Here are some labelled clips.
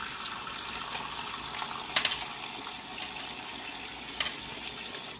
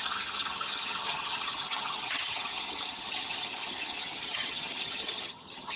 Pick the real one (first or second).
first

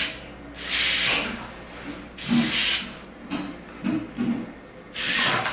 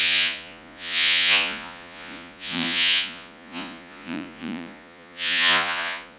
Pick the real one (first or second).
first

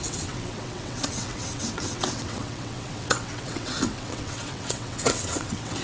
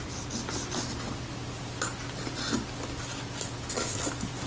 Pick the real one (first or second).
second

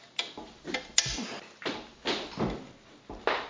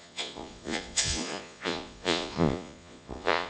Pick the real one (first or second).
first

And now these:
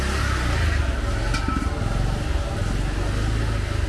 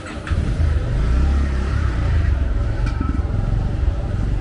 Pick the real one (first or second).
first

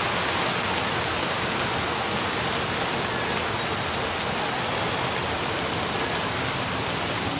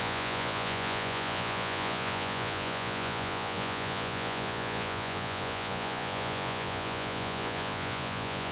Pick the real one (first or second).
first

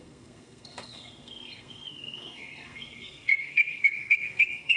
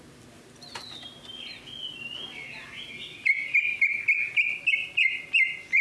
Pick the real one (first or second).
second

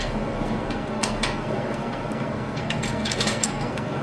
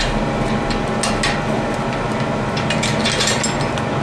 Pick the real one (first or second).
second